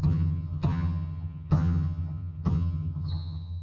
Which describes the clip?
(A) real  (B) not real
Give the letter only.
B